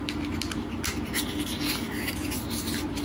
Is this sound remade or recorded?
recorded